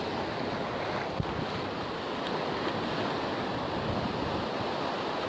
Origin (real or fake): real